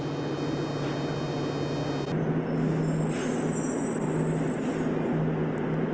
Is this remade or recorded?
recorded